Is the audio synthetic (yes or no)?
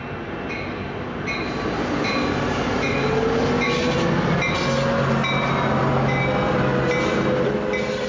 no